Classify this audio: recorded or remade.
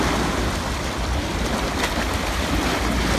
recorded